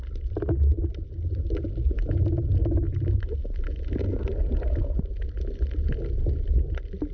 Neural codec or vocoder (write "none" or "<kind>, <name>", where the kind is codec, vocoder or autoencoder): none